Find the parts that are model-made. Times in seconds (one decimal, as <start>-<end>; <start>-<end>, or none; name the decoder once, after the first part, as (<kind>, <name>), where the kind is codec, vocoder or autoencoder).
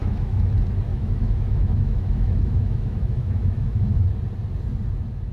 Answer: 0.0-0.5 (autoencoder, DAC-VAE); 0.9-4.1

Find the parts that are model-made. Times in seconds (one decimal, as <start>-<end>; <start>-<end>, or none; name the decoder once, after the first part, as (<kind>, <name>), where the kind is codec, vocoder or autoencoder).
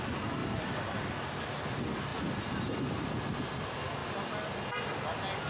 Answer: none